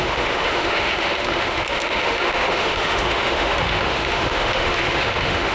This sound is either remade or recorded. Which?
remade